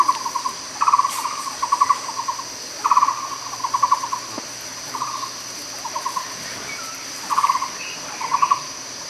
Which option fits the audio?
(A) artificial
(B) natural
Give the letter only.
B